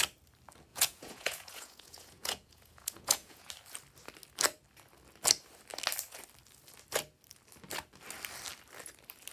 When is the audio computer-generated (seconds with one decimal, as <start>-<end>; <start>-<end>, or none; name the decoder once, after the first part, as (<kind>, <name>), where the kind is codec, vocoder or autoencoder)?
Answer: 0.7-3.5 (vocoder, Vocos)